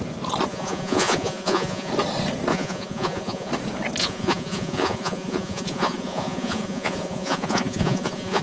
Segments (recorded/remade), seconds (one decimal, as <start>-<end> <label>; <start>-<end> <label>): 0.0-0.5 recorded; 0.5-1.9 remade; 1.9-2.5 recorded; 2.5-3.5 remade; 3.5-4.0 recorded; 4.0-8.4 remade